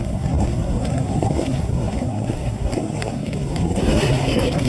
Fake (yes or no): yes